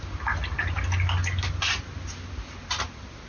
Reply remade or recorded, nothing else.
recorded